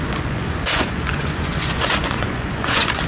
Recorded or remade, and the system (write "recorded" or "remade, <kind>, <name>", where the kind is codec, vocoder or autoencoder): remade, vocoder, Vocos